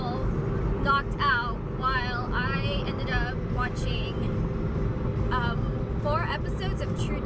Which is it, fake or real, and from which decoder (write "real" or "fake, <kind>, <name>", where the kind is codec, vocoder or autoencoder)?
real